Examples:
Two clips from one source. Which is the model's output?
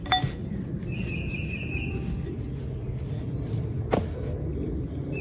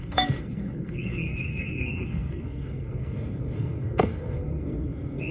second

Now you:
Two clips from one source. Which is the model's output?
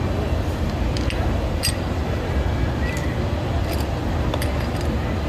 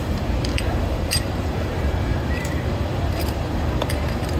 second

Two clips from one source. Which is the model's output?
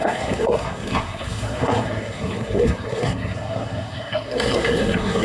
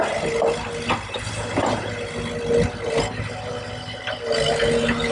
first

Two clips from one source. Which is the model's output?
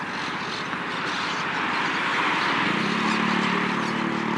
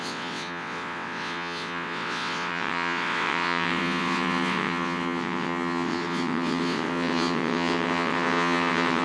second